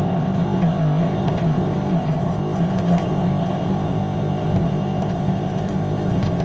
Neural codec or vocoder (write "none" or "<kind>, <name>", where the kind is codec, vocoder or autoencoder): codec, ZipCodec